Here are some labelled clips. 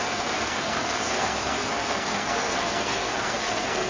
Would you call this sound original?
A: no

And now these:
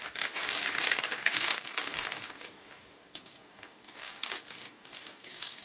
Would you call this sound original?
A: no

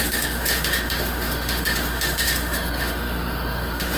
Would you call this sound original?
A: no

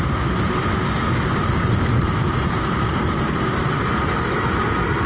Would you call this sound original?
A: yes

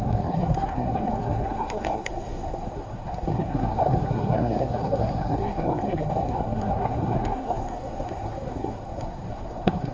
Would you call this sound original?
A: no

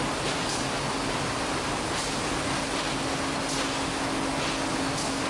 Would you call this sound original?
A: yes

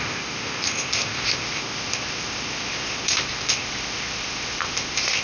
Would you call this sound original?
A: no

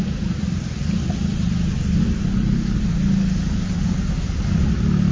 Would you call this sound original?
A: yes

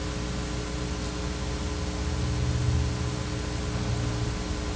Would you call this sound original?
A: yes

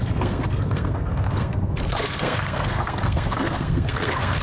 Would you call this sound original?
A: no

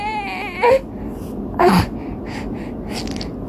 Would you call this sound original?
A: yes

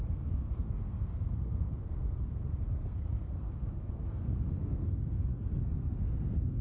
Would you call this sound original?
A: no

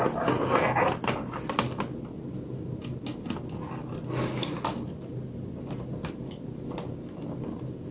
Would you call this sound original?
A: yes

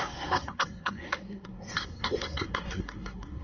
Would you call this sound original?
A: no